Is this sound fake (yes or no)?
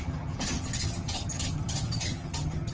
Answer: yes